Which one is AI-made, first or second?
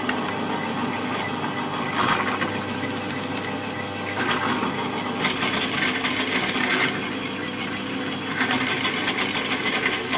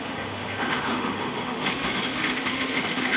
second